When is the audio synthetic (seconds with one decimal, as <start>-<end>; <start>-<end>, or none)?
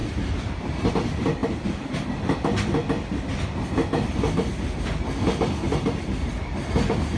none